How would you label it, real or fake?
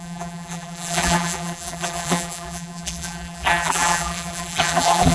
fake